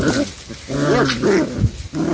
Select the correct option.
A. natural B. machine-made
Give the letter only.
A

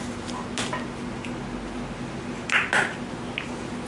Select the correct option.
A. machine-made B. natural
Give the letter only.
B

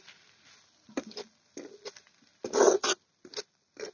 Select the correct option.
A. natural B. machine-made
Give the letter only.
A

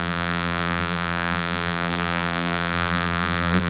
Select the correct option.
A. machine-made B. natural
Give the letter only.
A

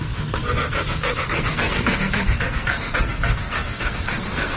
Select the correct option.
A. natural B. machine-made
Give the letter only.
B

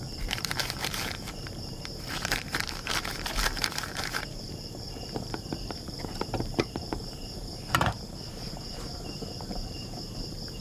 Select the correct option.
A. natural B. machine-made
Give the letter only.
B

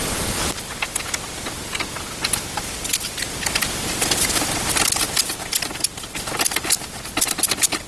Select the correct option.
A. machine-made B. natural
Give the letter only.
B